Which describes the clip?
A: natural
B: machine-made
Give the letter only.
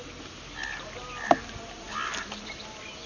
A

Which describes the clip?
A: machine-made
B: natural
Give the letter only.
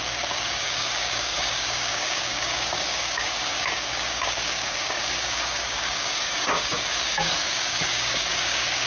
A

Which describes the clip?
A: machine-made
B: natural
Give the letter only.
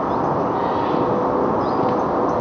B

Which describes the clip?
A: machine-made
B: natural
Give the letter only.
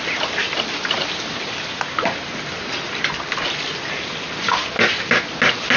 B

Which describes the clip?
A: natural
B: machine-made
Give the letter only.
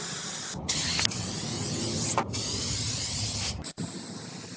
A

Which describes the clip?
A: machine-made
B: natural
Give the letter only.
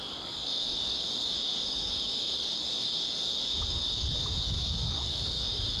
A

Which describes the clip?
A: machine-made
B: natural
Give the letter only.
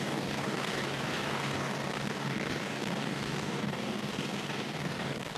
A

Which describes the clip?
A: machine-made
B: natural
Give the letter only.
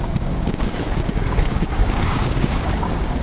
A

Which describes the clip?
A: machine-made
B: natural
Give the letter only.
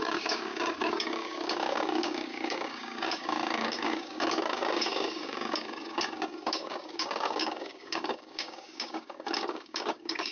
A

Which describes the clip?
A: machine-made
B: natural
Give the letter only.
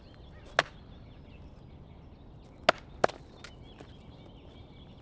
B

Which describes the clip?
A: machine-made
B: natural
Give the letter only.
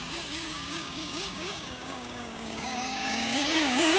A